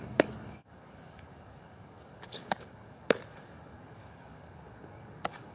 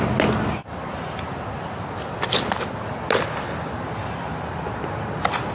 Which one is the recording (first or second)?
second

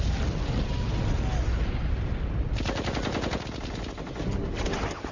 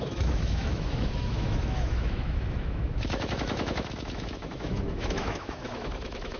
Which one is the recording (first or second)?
first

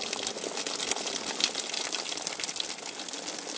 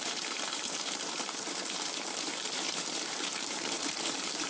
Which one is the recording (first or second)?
first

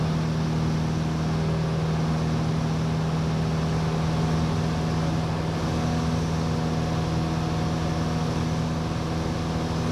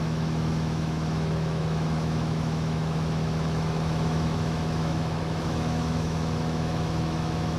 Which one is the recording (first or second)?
first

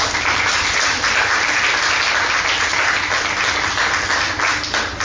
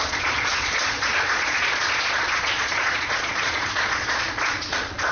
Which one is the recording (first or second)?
first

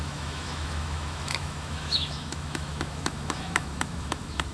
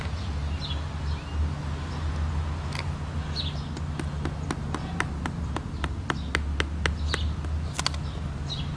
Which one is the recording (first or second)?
second